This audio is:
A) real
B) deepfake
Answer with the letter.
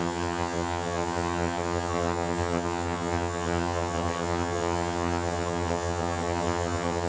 B